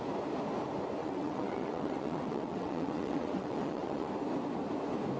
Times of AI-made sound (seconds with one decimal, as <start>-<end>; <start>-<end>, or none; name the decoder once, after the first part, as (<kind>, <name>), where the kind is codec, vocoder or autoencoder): 1.0-4.1 (vocoder, WaveNeXt)